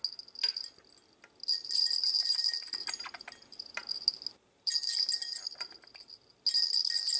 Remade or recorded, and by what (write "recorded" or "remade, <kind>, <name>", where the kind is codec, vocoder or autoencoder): recorded